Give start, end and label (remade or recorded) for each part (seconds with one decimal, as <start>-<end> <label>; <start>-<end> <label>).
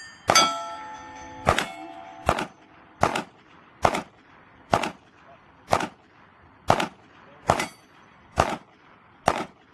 0.0-9.7 recorded